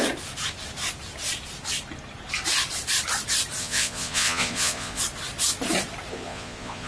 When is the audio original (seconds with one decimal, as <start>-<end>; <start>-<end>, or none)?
0.0-3.6; 5.0-6.1